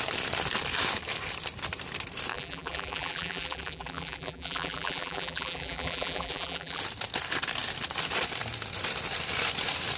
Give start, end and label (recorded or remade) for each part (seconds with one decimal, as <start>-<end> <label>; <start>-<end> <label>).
0.0-2.3 recorded; 2.3-6.8 remade; 6.8-10.0 recorded